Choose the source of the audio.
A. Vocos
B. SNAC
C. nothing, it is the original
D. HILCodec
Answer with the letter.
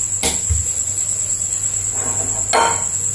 C